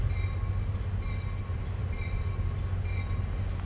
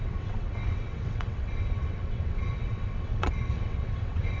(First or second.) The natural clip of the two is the first